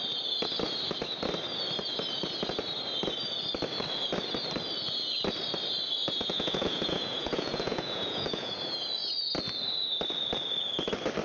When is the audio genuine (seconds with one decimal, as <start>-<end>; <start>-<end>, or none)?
0.0-6.0; 8.6-11.2